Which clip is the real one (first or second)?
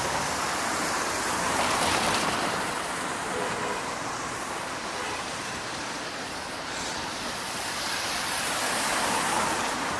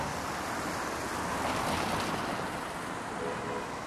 second